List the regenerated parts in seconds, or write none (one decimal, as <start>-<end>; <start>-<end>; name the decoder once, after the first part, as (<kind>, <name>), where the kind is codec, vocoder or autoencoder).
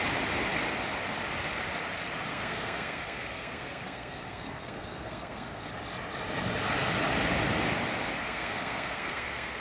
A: 2.3-5.7 (codec, SNAC); 8.2-9.6